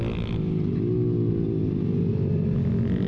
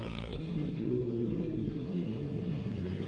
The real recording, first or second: first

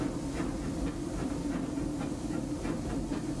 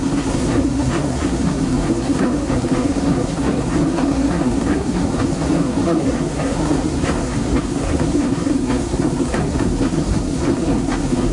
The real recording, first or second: first